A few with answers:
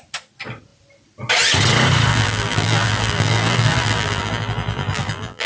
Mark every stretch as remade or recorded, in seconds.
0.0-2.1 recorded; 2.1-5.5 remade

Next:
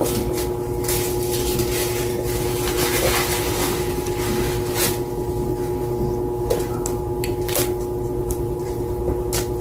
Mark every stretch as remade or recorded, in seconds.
0.0-8.2 recorded; 8.2-9.0 remade; 9.0-9.6 recorded

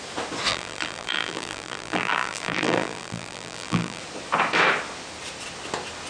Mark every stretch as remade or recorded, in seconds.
0.0-0.5 recorded; 0.5-4.0 remade; 4.0-6.1 recorded

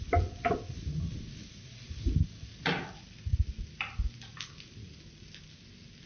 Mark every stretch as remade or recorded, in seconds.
0.0-6.1 recorded

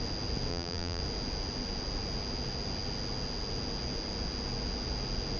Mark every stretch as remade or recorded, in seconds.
0.0-0.5 recorded; 0.5-1.0 remade; 1.0-5.4 recorded

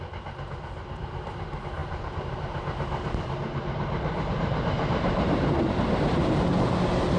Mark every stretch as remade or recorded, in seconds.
0.0-1.8 recorded; 1.8-5.7 remade; 5.7-7.2 recorded